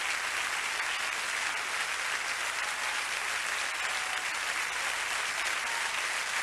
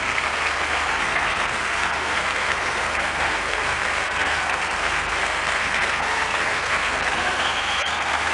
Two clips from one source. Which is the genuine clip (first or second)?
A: first